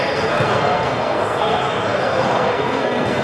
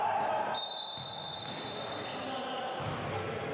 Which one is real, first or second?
second